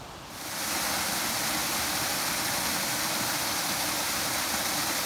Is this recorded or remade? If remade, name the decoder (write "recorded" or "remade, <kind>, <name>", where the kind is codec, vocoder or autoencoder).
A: recorded